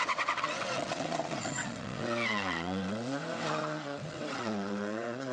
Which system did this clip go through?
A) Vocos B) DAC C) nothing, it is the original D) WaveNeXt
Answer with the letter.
D